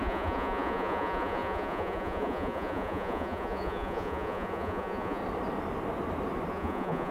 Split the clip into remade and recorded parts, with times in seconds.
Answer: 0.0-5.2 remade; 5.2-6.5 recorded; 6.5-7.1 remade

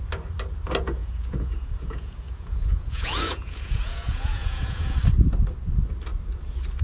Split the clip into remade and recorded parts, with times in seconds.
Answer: 0.0-1.0 recorded; 1.0-5.0 remade; 5.0-6.8 recorded

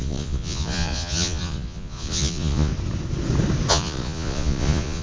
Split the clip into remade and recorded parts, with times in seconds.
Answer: 0.0-2.7 remade; 2.7-3.7 recorded; 3.7-5.0 remade